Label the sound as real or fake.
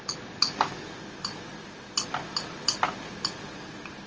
real